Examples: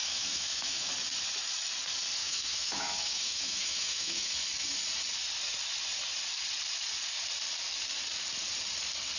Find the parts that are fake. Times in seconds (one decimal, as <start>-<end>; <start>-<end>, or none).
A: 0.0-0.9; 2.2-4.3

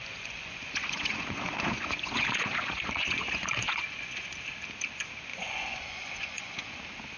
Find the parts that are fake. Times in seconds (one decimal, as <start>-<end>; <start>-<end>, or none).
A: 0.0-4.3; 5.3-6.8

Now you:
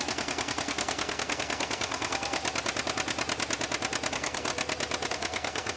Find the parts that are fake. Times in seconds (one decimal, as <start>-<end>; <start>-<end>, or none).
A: 0.0-2.4; 4.1-4.5; 5.1-5.8

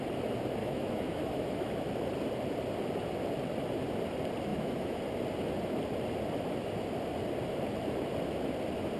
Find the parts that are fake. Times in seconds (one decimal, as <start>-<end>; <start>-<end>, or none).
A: 0.6-1.7; 4.5-5.0

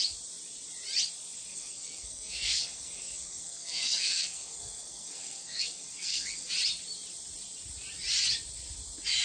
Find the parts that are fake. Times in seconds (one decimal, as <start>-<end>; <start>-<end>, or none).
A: 1.5-6.5